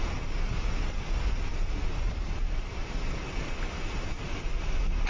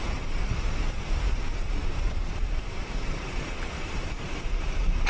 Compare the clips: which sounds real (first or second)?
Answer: first